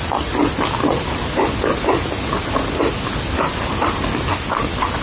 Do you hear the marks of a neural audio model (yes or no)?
no